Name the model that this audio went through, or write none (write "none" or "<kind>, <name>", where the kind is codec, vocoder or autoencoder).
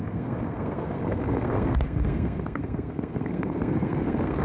codec, SNAC